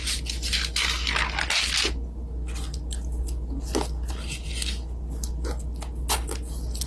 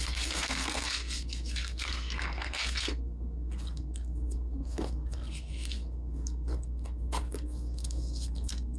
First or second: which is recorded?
first